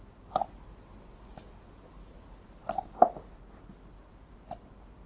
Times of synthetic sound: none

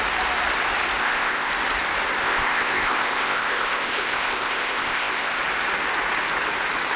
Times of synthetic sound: 1.0-1.5; 2.2-5.4

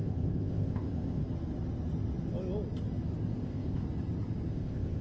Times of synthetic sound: 0.0-1.2; 3.4-3.8; 4.5-5.0